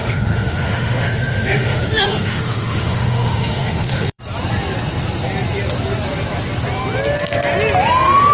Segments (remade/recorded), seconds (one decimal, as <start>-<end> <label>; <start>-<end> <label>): 0.0-4.2 remade; 4.2-8.3 recorded